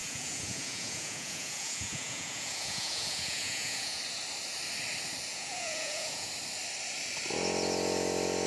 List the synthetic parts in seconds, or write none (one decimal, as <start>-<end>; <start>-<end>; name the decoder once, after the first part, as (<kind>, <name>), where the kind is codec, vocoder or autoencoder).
0.0-4.0 (vocoder, Vocos); 5.3-6.3

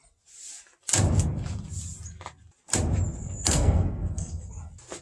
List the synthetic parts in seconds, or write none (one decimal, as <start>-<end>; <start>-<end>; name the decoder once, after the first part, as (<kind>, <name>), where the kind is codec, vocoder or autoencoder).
3.2-4.5 (codec, SNAC)

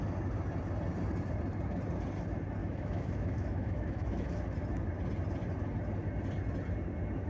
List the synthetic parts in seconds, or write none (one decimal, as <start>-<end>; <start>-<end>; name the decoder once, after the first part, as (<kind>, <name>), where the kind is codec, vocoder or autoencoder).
2.6-4.4 (autoencoder, DAC-VAE)

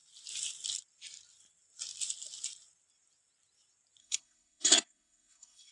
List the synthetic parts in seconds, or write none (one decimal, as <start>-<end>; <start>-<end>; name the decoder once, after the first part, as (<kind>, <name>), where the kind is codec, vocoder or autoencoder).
4.0-5.7 (codec, SNAC)

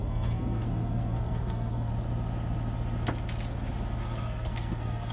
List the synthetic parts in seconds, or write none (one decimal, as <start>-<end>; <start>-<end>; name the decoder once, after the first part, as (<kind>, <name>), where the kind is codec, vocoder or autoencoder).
0.0-1.9 (codec, SNAC); 4.0-5.1

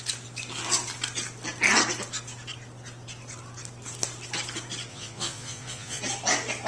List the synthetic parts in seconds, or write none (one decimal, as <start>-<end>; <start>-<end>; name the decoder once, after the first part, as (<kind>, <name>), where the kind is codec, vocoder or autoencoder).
4.9-6.0 (vocoder, Vocos)

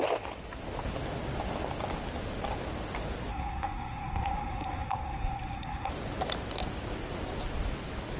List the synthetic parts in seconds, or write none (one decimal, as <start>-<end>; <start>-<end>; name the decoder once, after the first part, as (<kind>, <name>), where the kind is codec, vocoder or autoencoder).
3.3-5.9 (codec, SNAC)

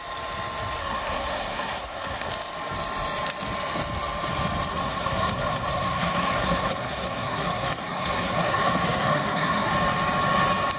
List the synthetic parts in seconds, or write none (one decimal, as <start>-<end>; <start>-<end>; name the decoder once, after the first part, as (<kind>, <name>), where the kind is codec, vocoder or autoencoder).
0.8-2.3 (codec, SNAC); 4.7-9.7